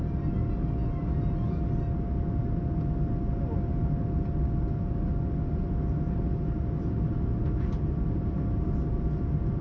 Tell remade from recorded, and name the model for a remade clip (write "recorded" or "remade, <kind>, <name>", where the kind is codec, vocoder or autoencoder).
recorded